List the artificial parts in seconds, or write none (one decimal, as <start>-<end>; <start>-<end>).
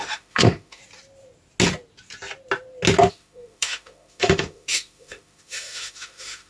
0.0-0.8; 3.1-6.5